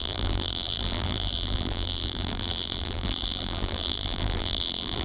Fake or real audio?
fake